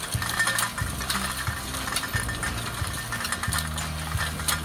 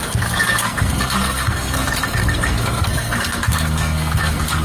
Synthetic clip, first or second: second